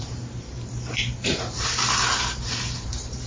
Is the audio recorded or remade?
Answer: remade